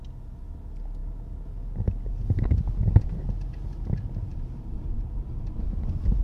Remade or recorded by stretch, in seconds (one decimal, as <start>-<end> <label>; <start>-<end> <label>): 0.0-4.3 recorded; 4.3-5.7 remade; 5.7-6.2 recorded

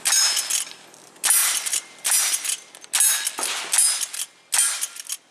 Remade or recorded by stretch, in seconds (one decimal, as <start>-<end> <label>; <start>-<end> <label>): 0.0-1.4 recorded; 1.4-2.7 remade; 2.7-5.3 recorded

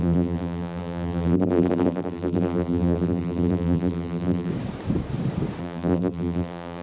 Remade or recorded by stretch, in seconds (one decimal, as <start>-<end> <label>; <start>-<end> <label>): 0.0-4.5 remade; 4.5-5.6 recorded; 5.6-6.8 remade

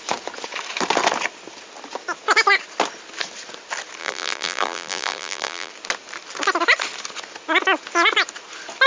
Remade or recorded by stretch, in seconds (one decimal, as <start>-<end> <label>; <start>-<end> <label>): 0.0-4.0 recorded; 4.0-5.7 remade; 5.7-8.9 recorded